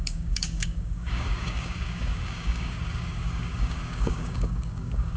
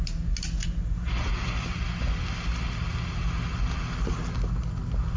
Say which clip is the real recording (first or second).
second